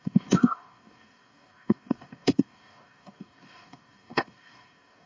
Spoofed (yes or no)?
yes